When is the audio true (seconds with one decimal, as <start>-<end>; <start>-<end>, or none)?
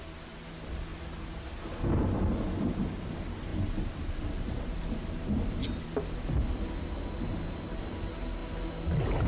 0.0-9.3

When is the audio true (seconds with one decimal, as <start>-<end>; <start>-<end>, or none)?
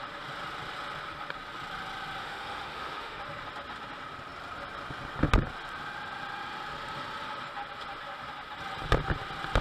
0.0-2.2; 3.2-9.6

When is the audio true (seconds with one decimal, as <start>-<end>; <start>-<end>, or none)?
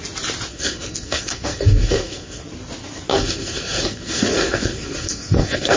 0.0-0.5; 2.4-3.1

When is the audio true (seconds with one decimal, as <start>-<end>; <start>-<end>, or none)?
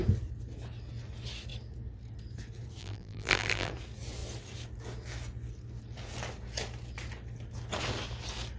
0.0-2.8; 3.7-8.6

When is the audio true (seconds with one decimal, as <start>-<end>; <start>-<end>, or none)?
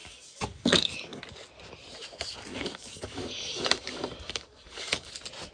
1.2-2.5; 5.1-5.5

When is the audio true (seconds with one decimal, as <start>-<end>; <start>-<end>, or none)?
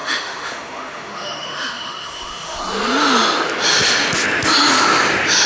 2.6-5.5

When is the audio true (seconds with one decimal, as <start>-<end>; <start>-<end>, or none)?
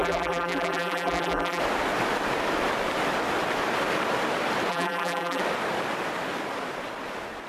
1.6-4.7; 5.4-7.5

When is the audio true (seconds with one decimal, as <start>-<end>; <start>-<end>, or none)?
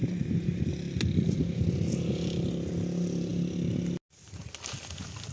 0.7-5.3